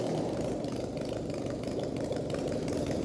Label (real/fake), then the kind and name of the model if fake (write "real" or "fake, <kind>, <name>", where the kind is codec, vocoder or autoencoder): fake, vocoder, BigVGAN v2